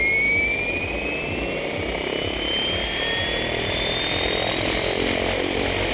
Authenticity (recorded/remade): recorded